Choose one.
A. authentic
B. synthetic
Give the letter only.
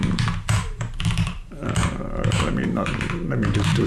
B